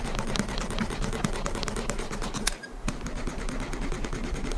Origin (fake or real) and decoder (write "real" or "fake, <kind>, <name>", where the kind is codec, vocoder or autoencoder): fake, vocoder, BigVGAN v2